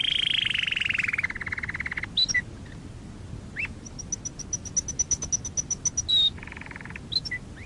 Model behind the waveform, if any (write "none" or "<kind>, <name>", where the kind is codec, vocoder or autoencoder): none